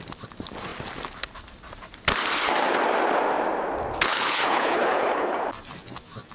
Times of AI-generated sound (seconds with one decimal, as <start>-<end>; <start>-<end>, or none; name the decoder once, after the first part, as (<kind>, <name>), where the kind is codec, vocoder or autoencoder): 4.1-5.4 (codec, HILCodec)